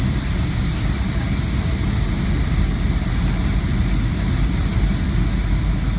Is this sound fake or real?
real